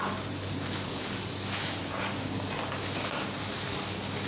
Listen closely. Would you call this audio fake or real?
real